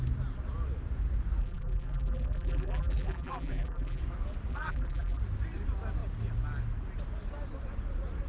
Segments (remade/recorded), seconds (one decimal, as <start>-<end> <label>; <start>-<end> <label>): 0.0-1.4 recorded; 1.4-4.0 remade; 4.0-4.5 recorded; 4.5-5.2 remade; 5.2-8.3 recorded